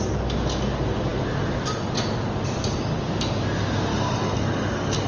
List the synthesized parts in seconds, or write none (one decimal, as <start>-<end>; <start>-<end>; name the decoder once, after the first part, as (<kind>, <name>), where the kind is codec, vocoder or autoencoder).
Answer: 3.9-5.1 (codec, DAC)